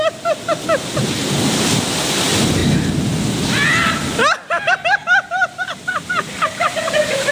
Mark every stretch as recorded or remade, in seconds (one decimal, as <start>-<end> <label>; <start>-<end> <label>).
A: 0.0-7.3 recorded

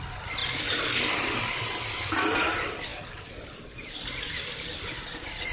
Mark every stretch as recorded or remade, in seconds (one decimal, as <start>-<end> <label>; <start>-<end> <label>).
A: 0.0-5.5 recorded